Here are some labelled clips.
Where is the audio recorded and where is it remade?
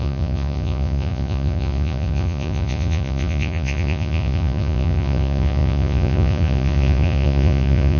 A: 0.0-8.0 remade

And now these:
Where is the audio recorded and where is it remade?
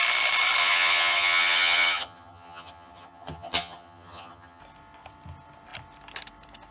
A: 0.0-0.6 recorded; 0.6-4.6 remade; 4.6-6.7 recorded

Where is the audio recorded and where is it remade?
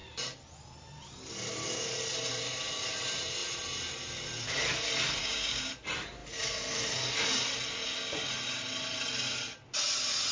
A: 0.0-5.2 recorded; 5.2-5.7 remade; 5.7-10.3 recorded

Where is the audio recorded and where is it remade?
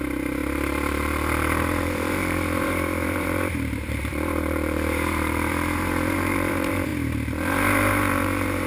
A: 0.0-8.7 remade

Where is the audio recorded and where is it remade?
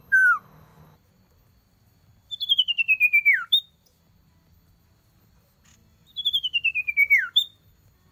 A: 0.0-8.1 recorded